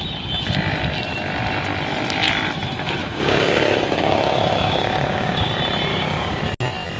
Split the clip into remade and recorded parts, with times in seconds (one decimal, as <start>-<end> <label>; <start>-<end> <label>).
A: 0.0-3.0 recorded; 3.0-5.5 remade; 5.5-5.9 recorded; 5.9-6.4 remade; 6.4-7.0 recorded